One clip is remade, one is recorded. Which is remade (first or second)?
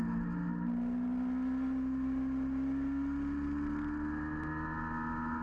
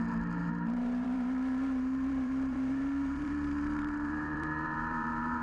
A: second